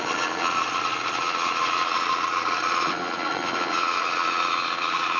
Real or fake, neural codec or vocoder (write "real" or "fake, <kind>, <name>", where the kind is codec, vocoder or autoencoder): fake, vocoder, Vocos